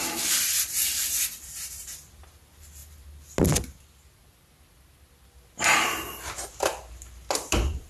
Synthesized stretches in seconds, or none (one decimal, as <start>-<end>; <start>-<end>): none